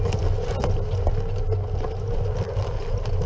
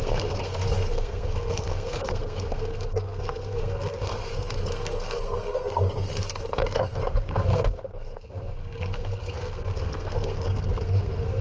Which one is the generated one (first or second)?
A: second